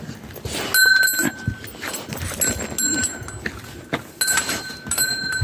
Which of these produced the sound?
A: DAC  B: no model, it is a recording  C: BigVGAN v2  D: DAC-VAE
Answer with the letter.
B